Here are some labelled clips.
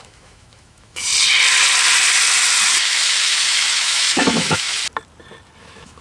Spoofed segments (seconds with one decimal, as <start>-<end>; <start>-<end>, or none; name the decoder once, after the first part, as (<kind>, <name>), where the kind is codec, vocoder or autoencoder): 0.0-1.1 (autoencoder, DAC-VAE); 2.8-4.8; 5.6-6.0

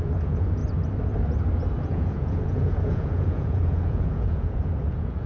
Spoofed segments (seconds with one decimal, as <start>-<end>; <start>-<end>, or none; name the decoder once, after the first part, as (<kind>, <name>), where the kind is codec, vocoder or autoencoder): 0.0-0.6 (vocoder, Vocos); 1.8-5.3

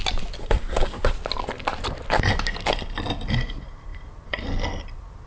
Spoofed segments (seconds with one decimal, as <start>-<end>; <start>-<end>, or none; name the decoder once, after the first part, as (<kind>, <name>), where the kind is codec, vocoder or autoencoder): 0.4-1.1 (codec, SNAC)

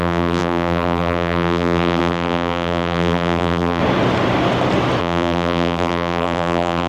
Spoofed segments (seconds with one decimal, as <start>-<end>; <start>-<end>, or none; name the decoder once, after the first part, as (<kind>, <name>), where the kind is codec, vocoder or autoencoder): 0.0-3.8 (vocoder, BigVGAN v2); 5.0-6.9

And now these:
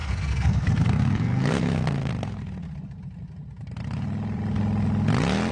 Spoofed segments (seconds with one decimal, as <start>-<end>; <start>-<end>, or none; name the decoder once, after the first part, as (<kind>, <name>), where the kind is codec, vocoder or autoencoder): 0.0-2.1 (codec, SNAC)

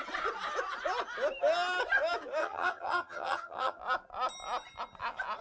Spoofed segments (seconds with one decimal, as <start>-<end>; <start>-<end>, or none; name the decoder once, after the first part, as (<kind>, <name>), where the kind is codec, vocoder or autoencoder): 2.4-3.8 (vocoder, HiFi-GAN)

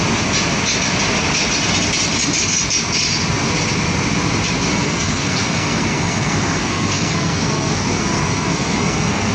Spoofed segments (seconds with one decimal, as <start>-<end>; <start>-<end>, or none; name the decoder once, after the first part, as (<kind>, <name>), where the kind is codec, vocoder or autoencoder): 4.7-9.3 (codec, SNAC)